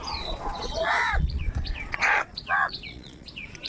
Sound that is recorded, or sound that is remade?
remade